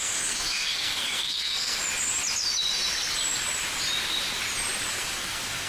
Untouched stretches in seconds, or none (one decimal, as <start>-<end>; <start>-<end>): 1.8-4.9